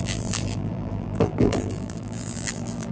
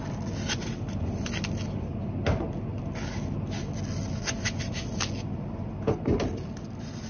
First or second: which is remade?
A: first